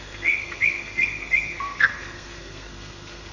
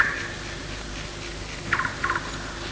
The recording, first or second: second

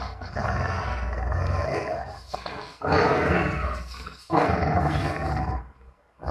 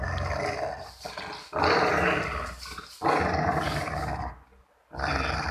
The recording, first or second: second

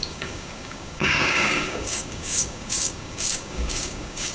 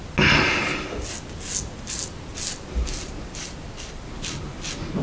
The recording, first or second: second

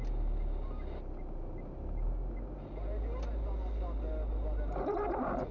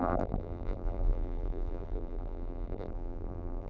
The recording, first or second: first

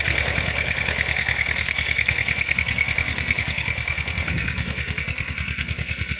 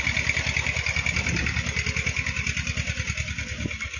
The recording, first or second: second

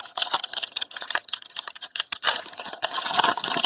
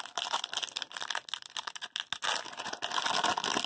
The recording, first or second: second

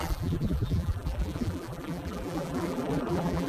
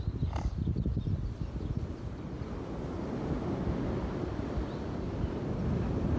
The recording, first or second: second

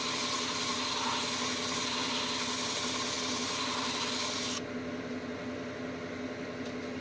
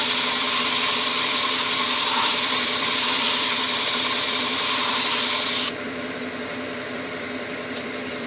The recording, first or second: first